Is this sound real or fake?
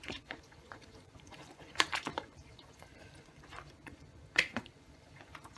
fake